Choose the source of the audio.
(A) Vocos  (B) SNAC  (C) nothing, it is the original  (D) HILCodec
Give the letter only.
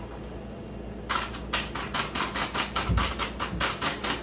C